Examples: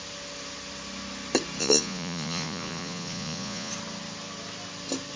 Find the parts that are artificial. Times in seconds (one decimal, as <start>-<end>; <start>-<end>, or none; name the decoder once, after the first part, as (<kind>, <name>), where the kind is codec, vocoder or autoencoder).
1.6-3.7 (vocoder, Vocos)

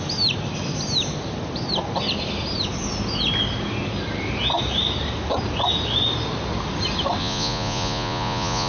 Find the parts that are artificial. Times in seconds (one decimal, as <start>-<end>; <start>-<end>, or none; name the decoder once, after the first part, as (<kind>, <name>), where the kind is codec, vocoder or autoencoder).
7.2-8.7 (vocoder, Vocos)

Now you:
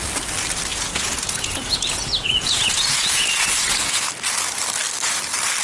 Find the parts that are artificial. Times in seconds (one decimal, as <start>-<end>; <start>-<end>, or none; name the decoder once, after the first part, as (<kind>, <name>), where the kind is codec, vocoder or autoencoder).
0.7-4.1 (vocoder, Vocos)

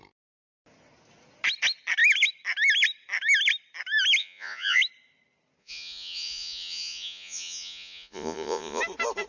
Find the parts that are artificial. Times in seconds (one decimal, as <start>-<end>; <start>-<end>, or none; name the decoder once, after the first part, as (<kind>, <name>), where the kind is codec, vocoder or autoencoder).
4.2-4.8 (vocoder, Vocos); 5.6-8.8